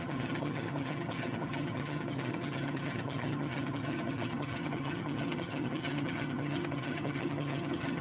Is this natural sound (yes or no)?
no